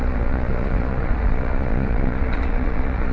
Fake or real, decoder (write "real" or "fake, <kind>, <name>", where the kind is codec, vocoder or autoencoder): fake, vocoder, Vocos